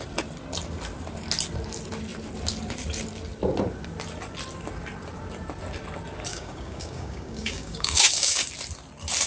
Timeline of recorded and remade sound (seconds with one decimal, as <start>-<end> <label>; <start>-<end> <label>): 0.0-6.3 recorded; 6.3-8.5 remade; 8.5-9.3 recorded

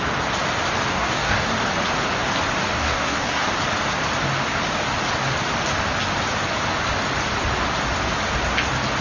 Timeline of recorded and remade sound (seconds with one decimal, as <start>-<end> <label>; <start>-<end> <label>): 0.0-0.9 recorded; 0.9-1.5 remade; 1.5-2.6 recorded; 2.6-3.5 remade; 3.5-9.0 recorded